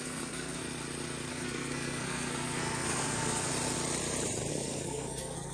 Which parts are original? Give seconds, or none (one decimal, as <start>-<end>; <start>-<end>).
0.6-1.3; 3.5-4.5